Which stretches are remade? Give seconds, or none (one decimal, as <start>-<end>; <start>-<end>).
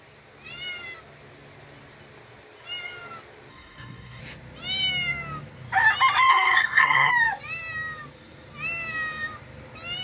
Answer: 3.5-4.2; 6.3-7.1